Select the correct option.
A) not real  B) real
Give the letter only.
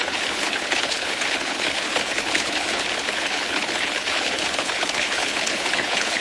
A